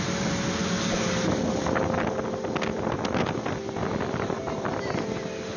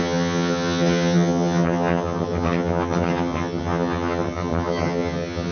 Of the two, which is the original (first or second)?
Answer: first